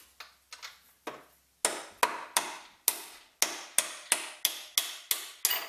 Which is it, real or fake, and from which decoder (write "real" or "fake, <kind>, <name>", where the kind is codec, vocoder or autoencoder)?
real